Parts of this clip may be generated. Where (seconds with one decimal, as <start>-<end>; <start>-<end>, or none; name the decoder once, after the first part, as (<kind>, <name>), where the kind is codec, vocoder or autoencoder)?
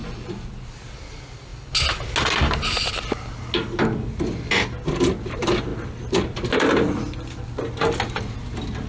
0.0-0.6 (vocoder, BigVGAN v2)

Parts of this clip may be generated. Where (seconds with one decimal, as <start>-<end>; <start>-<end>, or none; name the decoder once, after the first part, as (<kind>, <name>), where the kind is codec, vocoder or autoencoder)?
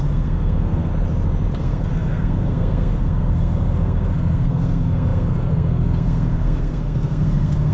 0.0-0.9 (codec, SNAC); 1.6-7.7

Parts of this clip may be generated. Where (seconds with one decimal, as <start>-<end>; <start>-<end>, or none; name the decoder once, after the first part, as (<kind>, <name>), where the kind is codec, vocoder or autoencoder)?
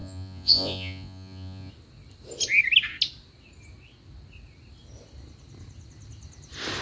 0.0-1.7 (vocoder, Vocos)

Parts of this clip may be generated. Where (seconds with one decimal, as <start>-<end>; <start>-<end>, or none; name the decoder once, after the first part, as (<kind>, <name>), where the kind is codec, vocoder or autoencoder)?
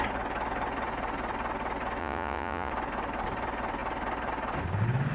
2.0-2.7 (vocoder, Vocos)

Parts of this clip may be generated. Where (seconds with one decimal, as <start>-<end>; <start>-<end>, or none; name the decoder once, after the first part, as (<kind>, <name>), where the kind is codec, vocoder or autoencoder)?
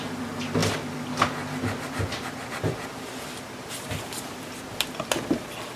none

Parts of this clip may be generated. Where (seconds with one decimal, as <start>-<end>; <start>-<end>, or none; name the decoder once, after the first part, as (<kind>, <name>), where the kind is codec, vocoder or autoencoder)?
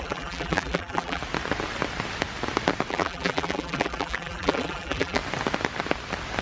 0.0-1.2 (vocoder, BigVGAN v2); 2.9-5.2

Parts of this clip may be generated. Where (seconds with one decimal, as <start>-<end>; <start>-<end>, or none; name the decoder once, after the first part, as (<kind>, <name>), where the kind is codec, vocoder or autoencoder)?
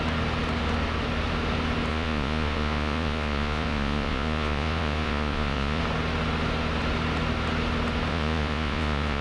1.9-5.8 (vocoder, Vocos); 8.1-9.2